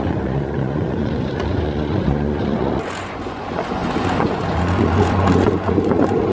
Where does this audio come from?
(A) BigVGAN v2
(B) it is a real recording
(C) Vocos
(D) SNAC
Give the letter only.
C